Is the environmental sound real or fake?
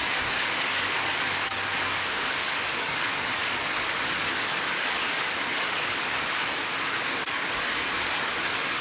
fake